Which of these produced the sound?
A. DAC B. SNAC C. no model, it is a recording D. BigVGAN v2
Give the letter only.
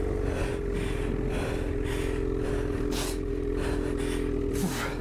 C